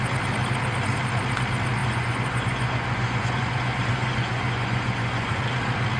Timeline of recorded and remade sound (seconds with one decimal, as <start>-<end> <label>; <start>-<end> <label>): 0.0-1.8 recorded; 1.8-5.4 remade; 5.4-6.0 recorded